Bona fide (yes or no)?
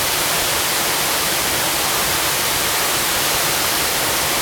yes